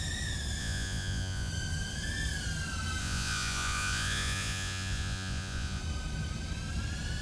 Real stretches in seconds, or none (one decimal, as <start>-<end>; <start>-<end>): 0.0-0.6; 1.5-3.0; 5.8-7.2